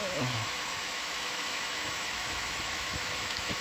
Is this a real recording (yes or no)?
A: no